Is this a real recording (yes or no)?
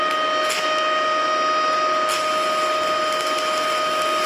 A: yes